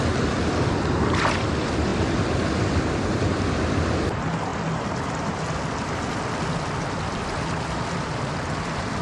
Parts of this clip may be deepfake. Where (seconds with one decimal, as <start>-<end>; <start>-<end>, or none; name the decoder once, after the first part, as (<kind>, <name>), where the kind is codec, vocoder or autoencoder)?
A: none